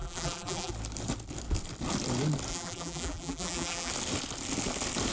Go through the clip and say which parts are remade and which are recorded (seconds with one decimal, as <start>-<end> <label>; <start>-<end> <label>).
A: 0.0-0.7 remade; 0.7-2.5 recorded; 2.5-3.9 remade; 3.9-5.1 recorded